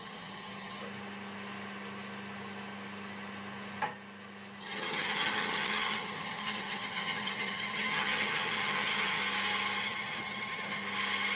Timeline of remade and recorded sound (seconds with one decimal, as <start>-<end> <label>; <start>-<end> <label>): 0.0-0.8 remade; 0.8-4.6 recorded; 4.6-9.2 remade; 9.2-9.8 recorded; 9.8-10.8 remade; 10.8-11.4 recorded